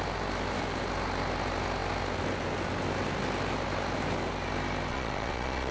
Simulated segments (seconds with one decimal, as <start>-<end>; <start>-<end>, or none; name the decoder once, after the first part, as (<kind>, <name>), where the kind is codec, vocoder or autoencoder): 4.9-5.7 (vocoder, Vocos)